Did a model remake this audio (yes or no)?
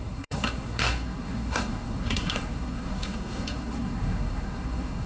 yes